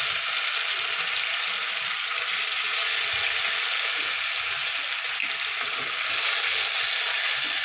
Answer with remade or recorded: recorded